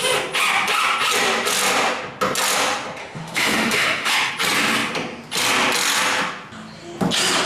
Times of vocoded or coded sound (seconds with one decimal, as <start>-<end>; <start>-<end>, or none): 3.0-4.3